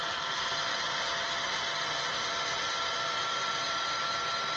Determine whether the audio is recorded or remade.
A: recorded